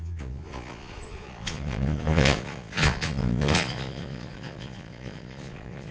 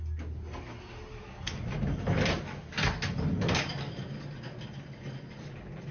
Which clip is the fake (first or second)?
first